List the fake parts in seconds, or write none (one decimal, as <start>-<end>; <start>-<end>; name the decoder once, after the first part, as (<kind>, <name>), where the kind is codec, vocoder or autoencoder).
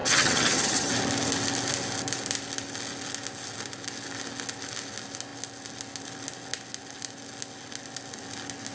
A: 0.0-0.9 (vocoder, HiFi-GAN)